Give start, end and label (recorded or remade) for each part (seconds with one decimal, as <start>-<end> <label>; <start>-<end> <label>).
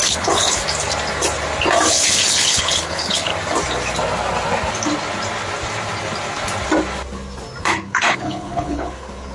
0.0-0.6 remade; 0.6-1.9 recorded; 1.9-3.3 remade; 3.3-7.6 recorded; 7.6-9.3 remade